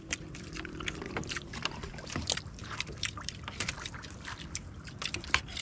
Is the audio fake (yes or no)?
yes